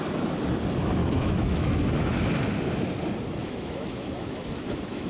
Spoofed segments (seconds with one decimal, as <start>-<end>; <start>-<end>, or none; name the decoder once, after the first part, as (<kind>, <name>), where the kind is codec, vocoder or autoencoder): 1.0-1.8 (autoencoder, DAC-VAE); 3.4-5.1